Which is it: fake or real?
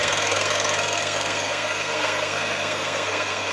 fake